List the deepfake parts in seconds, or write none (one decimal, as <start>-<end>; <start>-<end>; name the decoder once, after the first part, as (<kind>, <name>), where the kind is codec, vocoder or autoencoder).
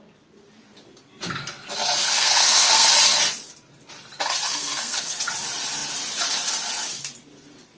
2.0-2.9 (codec, SNAC); 4.5-5.2